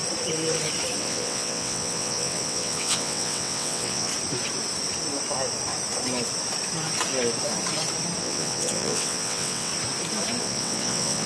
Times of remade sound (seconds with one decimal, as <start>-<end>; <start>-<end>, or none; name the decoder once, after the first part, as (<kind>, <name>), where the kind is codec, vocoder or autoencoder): 1.0-4.1 (vocoder, WaveNeXt); 8.2-9.7; 10.4-11.3